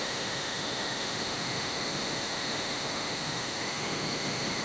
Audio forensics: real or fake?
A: fake